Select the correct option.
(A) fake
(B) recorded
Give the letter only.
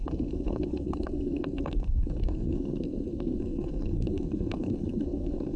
A